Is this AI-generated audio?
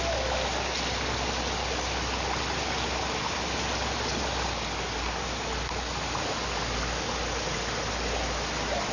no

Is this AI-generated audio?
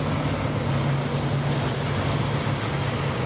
no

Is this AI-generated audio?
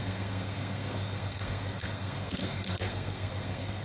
yes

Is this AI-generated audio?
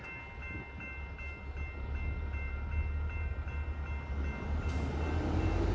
no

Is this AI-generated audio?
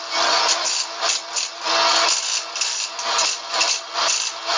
no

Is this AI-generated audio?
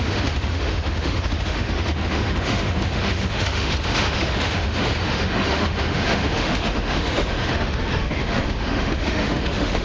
yes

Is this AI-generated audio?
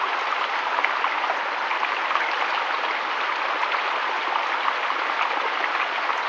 no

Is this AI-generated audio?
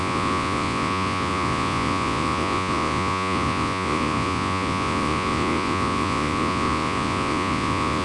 yes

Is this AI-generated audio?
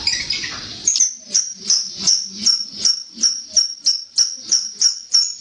yes